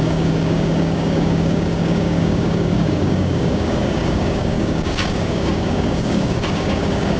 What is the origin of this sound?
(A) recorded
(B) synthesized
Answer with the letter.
B